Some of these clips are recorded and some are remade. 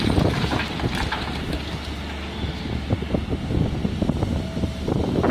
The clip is remade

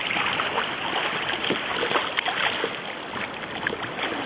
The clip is recorded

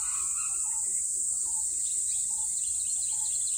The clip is recorded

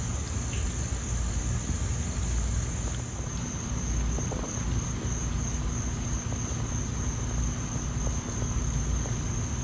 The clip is recorded